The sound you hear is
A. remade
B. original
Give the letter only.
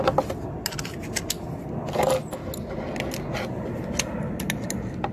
B